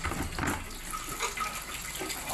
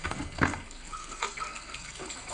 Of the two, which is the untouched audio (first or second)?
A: first